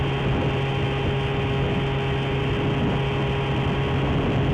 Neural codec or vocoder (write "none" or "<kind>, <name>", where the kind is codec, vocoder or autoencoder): none